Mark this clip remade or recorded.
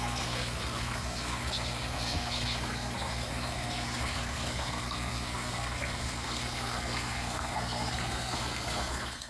remade